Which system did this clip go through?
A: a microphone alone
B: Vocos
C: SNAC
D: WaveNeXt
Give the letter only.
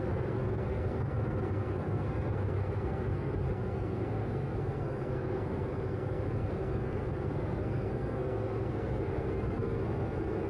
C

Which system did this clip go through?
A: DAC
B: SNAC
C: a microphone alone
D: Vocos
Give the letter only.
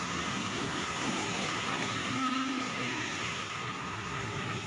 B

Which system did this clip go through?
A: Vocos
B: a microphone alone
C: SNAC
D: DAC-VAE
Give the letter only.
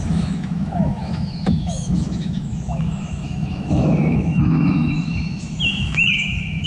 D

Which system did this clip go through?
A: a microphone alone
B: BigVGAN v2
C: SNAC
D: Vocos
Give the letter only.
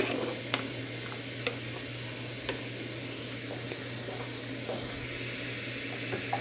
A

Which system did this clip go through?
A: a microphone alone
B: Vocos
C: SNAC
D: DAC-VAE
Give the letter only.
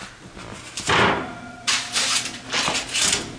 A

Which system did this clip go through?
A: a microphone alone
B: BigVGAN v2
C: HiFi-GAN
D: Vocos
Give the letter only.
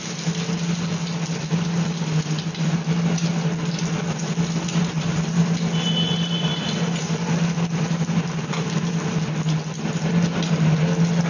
A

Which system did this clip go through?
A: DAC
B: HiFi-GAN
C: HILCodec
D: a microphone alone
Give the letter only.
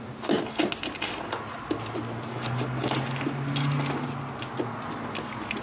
D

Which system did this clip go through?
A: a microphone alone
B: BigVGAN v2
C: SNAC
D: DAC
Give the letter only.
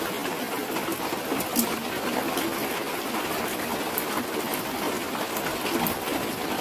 A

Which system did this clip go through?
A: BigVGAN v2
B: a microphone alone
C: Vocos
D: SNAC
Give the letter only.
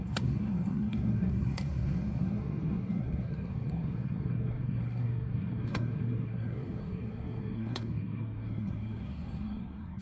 D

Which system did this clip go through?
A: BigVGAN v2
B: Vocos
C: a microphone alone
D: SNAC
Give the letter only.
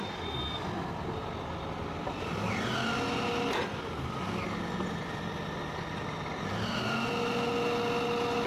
C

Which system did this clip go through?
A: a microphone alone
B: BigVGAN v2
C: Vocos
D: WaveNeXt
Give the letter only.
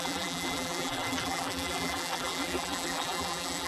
B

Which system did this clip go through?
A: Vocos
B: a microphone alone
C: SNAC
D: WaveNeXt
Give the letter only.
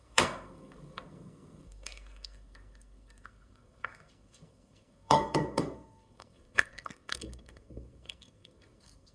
C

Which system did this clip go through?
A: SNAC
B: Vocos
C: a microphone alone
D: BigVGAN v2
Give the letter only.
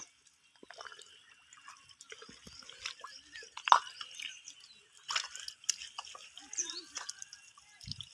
C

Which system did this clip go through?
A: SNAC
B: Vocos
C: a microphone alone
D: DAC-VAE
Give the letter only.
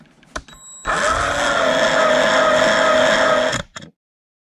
C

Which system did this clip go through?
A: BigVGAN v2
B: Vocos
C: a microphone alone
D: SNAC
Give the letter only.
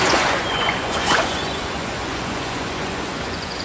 B